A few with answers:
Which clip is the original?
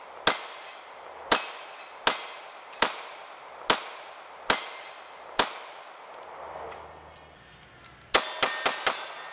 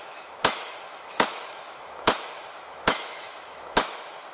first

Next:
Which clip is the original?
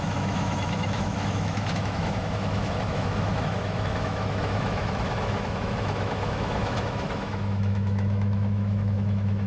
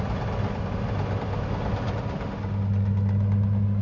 second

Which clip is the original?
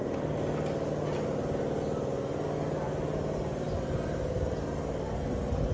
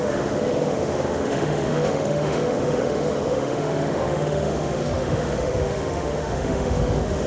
first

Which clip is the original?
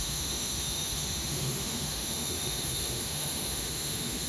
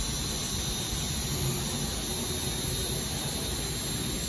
second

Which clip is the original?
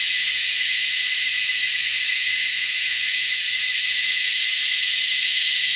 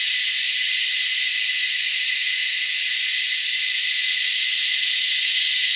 second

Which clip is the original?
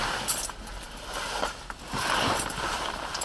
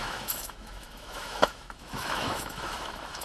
first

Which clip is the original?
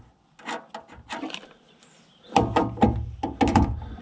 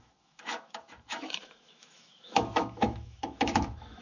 first